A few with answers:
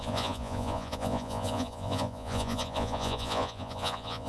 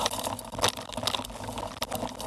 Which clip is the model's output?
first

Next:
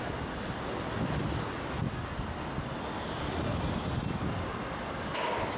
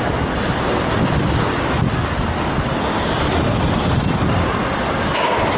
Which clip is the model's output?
second